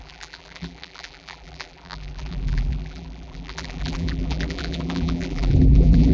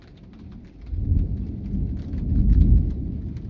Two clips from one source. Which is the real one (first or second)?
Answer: second